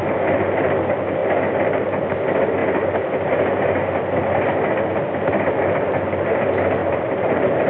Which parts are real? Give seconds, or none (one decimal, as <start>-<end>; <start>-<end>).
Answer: 0.0-6.8